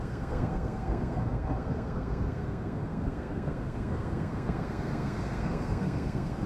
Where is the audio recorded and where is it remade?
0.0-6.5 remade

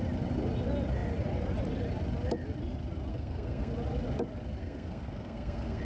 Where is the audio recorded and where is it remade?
0.0-3.1 recorded; 3.1-3.7 remade; 3.7-4.6 recorded; 4.6-5.8 remade

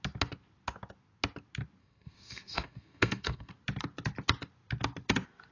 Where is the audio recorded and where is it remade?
0.0-1.8 recorded; 1.8-3.5 remade; 3.5-5.5 recorded

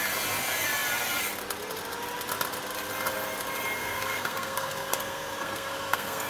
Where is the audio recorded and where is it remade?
0.0-3.8 recorded; 3.8-6.3 remade